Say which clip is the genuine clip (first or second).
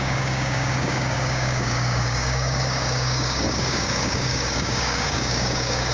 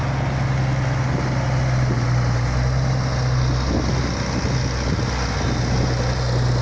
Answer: second